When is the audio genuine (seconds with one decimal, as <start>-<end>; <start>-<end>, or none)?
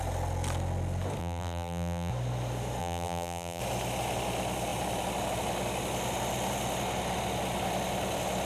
0.0-1.2; 2.1-2.8; 3.6-8.5